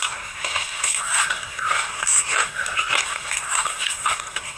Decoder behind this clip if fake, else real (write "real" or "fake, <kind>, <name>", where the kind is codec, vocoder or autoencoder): fake, codec, SNAC